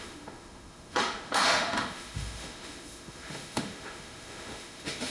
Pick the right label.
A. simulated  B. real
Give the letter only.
A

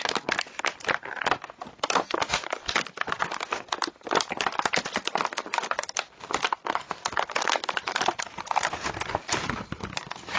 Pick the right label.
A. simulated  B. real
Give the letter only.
B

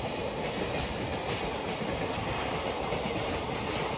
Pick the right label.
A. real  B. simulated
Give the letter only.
A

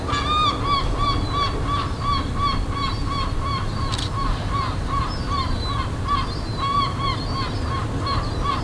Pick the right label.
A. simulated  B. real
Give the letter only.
B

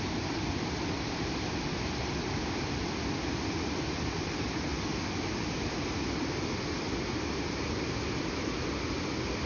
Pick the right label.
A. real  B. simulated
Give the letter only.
A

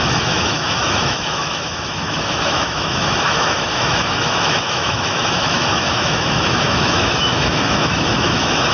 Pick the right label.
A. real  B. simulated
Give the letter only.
B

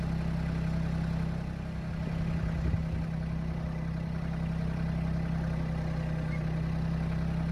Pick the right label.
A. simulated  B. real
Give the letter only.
B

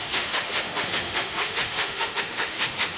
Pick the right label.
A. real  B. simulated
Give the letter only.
B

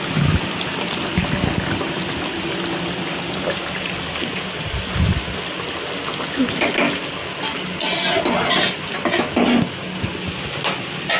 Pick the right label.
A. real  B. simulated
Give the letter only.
A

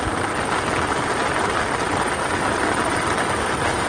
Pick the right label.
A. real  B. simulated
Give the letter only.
A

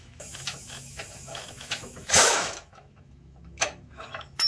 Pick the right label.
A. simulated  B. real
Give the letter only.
A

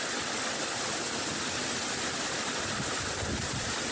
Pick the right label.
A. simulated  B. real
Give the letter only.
B